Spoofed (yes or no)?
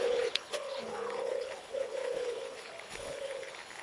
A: yes